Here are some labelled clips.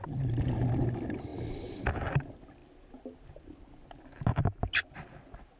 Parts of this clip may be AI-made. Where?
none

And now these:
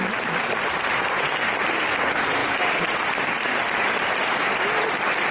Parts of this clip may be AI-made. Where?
none

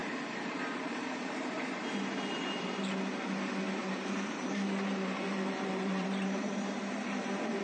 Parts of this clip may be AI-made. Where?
0.0-1.8; 2.4-2.9; 3.8-7.6

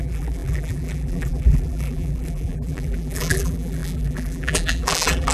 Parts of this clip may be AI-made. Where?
0.0-5.3

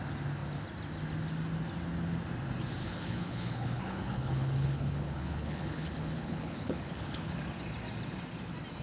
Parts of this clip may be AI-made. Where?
2.8-7.3